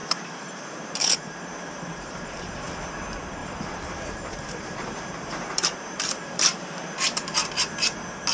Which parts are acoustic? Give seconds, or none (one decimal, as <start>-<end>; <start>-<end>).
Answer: 2.9-3.4; 7.5-8.3